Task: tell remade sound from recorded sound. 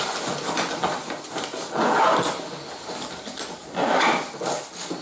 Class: recorded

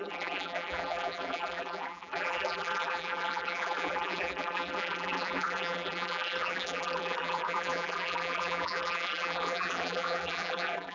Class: remade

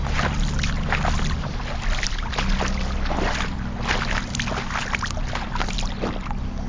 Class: recorded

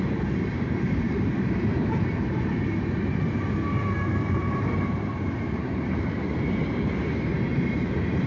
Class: remade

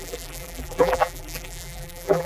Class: remade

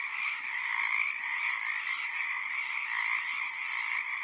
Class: recorded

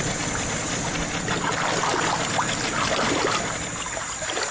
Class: recorded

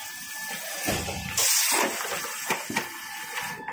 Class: recorded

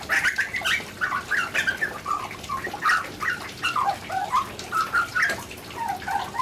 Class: remade